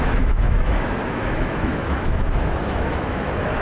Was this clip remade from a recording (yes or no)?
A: yes